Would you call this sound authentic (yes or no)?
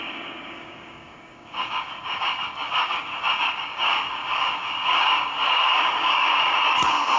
no